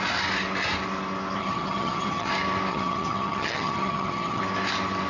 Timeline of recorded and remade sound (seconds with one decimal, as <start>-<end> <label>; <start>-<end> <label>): 0.0-1.4 recorded; 1.4-2.3 remade; 2.3-2.7 recorded; 2.7-4.4 remade; 4.4-5.1 recorded